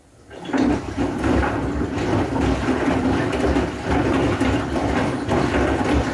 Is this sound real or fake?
real